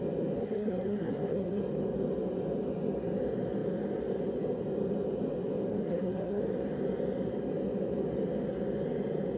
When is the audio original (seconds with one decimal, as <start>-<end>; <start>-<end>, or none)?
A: 0.0-0.4; 1.6-5.7; 6.4-9.4